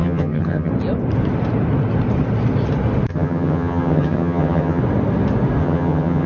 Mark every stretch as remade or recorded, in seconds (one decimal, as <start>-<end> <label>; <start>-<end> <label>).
0.0-0.7 remade; 0.7-3.1 recorded; 3.1-4.8 remade; 4.8-5.6 recorded; 5.6-6.3 remade